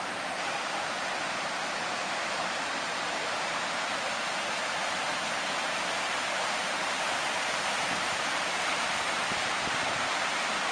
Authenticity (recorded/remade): remade